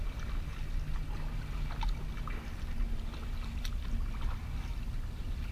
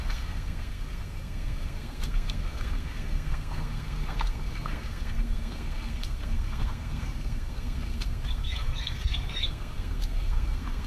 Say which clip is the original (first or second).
first